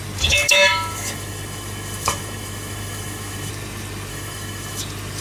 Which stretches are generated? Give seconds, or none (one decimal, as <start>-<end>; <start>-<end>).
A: 0.4-3.5; 4.1-4.8